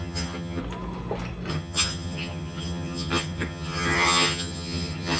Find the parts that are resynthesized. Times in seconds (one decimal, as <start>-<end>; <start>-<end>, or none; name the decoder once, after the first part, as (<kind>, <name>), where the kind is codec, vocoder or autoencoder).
0.0-0.6 (vocoder, HiFi-GAN); 1.5-5.2